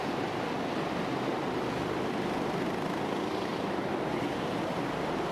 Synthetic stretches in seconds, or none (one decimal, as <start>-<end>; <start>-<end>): 0.0-5.3